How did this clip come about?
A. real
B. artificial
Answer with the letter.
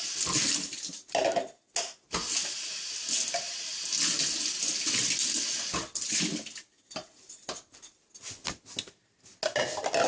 A